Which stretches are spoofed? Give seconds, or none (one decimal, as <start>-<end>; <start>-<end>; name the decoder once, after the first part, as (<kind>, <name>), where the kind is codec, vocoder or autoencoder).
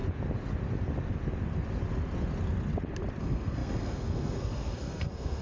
3.2-5.4 (codec, SNAC)